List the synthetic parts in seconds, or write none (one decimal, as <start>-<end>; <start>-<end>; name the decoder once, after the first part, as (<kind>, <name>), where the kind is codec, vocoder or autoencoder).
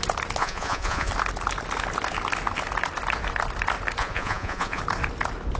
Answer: 0.4-1.1 (vocoder, Vocos); 4.0-4.8